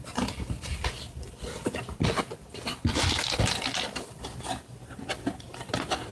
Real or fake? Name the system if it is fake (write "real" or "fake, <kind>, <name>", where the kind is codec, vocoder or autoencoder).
real